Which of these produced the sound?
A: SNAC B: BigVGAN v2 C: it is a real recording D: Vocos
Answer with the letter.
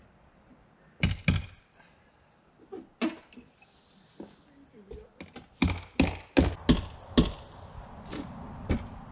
C